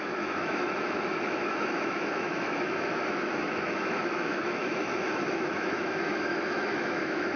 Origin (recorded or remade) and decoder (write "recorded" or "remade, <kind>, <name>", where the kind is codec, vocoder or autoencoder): remade, autoencoder, DAC-VAE